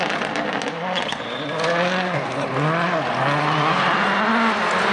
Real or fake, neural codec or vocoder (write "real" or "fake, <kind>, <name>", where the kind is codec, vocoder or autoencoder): real